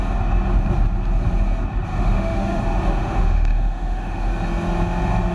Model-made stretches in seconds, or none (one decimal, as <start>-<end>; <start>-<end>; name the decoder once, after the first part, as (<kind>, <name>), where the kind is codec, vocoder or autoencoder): 1.9-2.6 (autoencoder, DAC-VAE); 3.0-4.3